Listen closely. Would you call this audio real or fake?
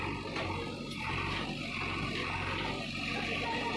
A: real